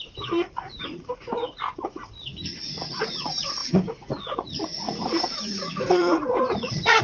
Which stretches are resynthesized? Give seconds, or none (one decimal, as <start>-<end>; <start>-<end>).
0.0-2.0; 2.6-7.0